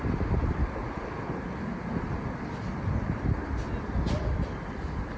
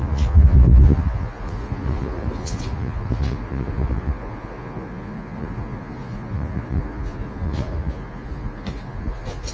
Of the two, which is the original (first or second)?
first